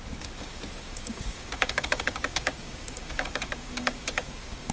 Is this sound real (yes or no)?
no